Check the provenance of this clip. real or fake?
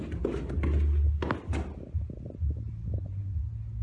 real